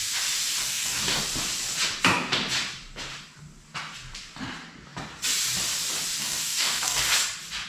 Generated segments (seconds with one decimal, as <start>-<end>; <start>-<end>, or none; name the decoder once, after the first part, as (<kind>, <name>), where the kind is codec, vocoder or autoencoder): 0.6-1.2 (codec, DAC); 6.2-7.0